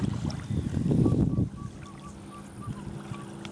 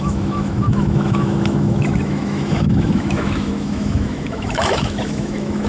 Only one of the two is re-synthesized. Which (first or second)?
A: second